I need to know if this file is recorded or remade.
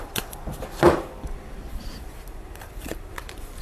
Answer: remade